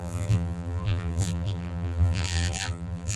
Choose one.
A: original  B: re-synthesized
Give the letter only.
B